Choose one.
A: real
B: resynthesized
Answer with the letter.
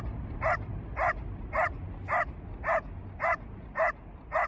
A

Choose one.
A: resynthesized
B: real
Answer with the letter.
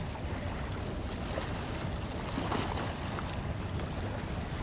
B